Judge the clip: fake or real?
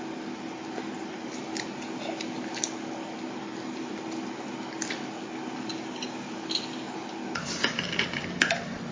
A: real